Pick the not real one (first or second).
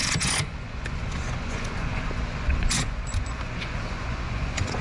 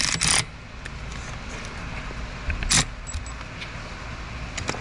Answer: first